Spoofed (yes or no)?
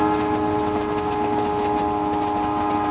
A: no